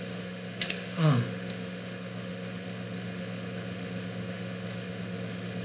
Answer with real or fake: fake